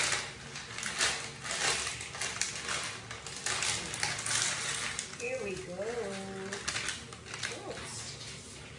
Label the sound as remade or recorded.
recorded